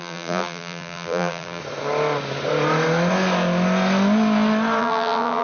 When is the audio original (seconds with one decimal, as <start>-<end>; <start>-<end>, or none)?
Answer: 1.6-4.8